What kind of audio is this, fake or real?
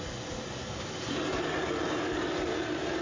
real